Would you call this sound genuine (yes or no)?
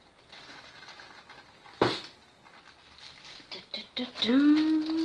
yes